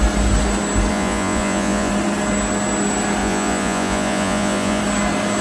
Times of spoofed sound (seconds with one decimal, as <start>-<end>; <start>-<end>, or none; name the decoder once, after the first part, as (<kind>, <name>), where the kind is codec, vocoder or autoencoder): 0.9-1.9 (vocoder, Vocos); 3.2-4.8